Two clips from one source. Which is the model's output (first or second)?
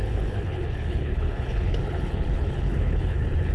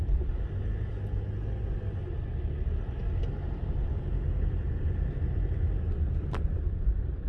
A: first